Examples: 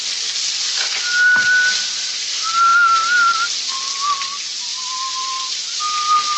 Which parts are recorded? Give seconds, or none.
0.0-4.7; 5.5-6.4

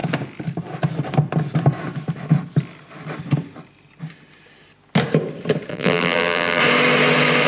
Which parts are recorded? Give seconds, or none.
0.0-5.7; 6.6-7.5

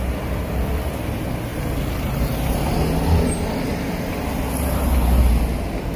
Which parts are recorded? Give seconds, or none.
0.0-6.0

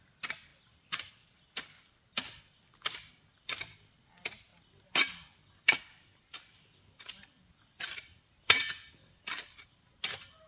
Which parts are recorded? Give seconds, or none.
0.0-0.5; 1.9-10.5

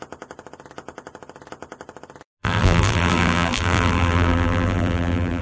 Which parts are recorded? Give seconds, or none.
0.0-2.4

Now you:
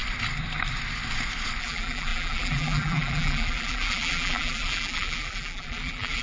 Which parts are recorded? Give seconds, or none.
0.0-1.6

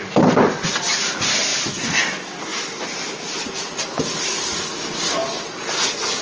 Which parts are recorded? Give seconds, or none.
0.0-2.5; 3.7-6.2

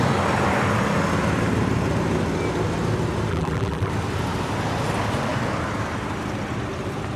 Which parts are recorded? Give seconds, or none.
0.0-3.3; 3.9-7.2